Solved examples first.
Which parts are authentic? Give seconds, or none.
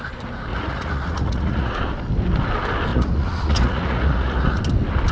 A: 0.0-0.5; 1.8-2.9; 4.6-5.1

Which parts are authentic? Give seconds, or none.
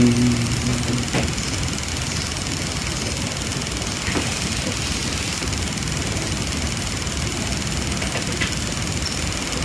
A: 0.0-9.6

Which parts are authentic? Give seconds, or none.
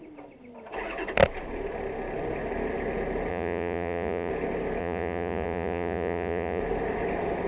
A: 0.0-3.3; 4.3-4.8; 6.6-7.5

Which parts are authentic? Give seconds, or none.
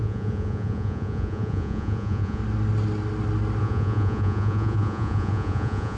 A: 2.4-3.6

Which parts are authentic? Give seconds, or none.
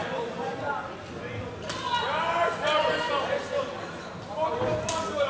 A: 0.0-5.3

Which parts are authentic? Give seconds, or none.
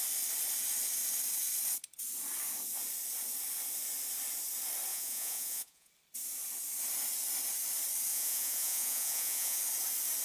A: 0.0-4.9; 5.9-8.1; 9.6-10.2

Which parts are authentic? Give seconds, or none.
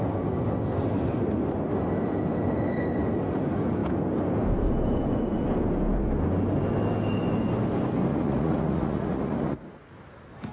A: 0.0-8.1; 9.9-10.5